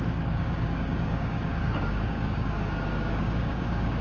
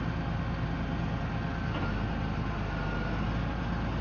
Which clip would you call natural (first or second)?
second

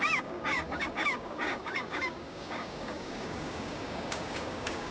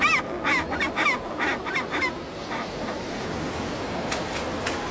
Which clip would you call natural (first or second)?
second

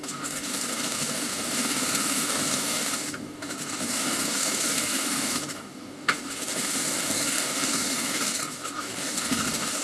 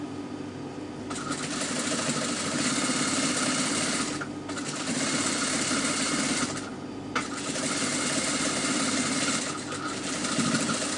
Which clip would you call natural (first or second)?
second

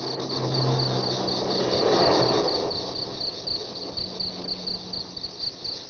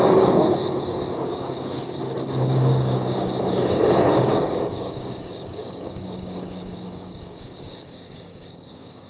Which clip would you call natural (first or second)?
first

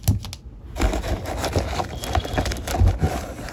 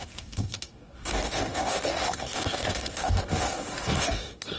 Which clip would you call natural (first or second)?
first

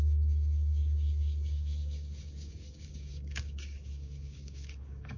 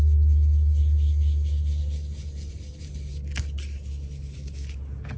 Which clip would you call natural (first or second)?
second